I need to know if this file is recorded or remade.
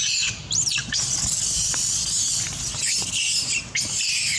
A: recorded